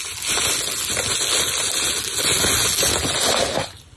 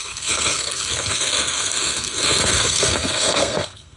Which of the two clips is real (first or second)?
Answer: first